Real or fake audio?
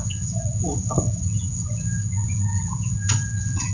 fake